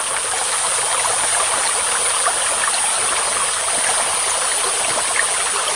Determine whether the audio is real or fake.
real